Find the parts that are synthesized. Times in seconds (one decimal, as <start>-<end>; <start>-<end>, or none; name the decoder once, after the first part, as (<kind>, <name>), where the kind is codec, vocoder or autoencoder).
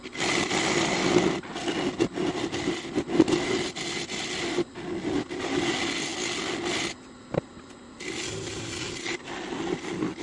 none